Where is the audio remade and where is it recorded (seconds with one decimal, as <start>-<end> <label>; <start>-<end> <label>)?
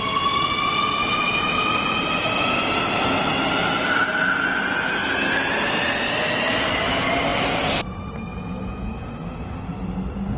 0.0-8.3 recorded; 8.3-9.7 remade; 9.7-10.4 recorded